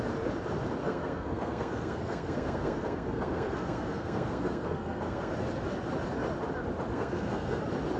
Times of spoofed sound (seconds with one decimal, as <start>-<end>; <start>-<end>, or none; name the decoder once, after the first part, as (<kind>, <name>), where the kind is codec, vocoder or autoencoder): 0.8-5.3 (codec, SNAC); 6.9-7.6